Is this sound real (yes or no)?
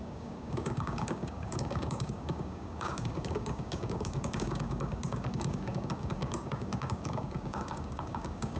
no